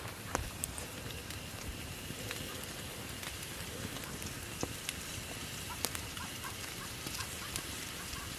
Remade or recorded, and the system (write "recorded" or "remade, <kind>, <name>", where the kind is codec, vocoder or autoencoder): recorded